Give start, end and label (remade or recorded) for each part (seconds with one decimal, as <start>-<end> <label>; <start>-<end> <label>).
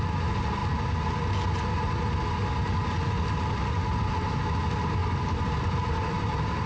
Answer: 0.0-5.0 recorded; 5.0-6.7 remade